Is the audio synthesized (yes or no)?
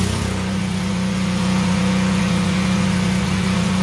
yes